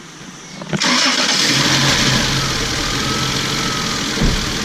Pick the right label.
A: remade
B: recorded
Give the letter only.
B